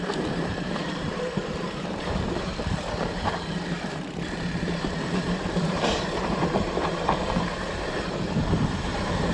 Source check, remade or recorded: remade